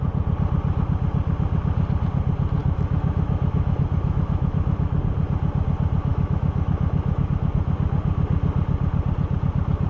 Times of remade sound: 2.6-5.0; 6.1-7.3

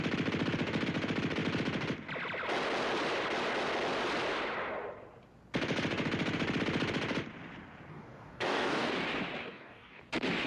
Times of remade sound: 7.9-8.9; 9.4-10.0

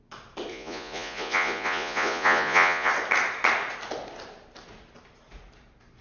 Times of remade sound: 0.5-2.9

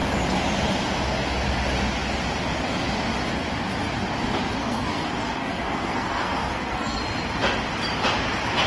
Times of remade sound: 4.6-7.0

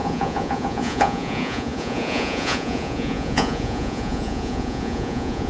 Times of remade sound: 0.0-5.5

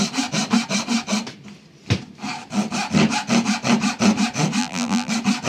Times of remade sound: 4.6-5.1

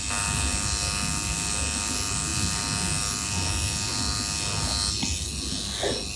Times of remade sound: none